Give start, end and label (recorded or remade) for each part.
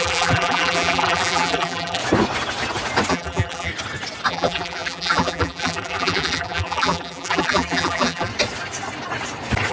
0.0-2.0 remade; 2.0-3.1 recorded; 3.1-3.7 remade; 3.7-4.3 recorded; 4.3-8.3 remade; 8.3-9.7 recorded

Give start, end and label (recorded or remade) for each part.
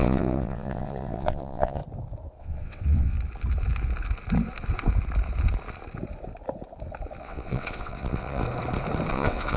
0.0-1.8 remade; 1.8-2.4 recorded; 2.4-3.1 remade; 3.1-7.2 recorded; 7.2-8.4 remade; 8.4-9.1 recorded; 9.1-9.6 remade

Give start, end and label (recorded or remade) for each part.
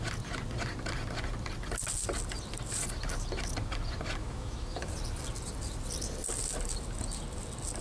0.0-4.2 recorded; 4.2-4.9 remade; 4.9-7.8 recorded